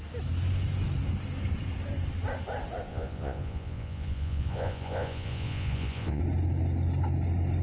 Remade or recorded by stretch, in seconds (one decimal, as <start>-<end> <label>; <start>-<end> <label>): 0.0-2.9 recorded; 2.9-6.2 remade; 6.2-7.6 recorded